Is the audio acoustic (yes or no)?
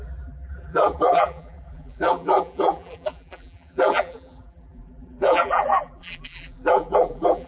no